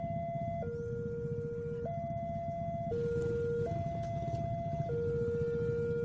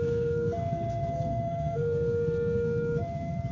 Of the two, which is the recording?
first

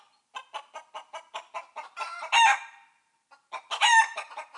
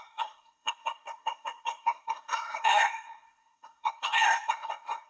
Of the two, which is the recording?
first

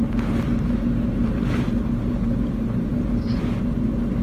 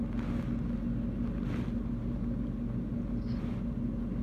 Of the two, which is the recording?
second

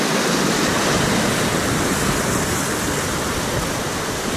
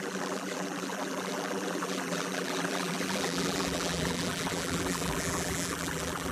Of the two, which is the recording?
first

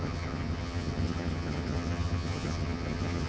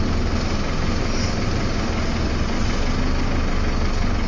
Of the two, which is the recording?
second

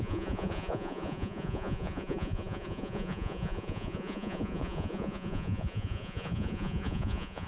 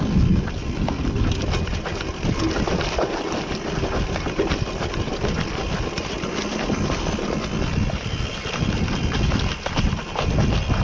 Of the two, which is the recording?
second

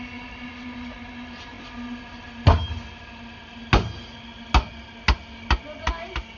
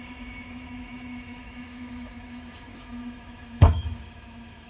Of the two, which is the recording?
first